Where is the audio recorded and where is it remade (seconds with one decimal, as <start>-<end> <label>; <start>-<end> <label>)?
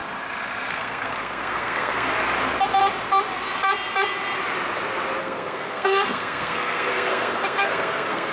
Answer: 0.0-0.7 recorded; 0.7-2.1 remade; 2.1-5.2 recorded; 5.2-8.3 remade